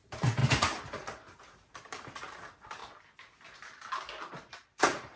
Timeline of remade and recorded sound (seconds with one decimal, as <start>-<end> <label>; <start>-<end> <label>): 0.0-2.8 remade; 2.8-4.5 recorded; 4.5-5.2 remade